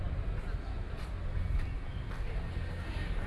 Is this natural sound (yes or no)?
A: yes